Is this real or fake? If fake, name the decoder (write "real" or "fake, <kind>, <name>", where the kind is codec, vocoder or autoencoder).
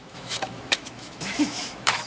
fake, autoencoder, DAC-VAE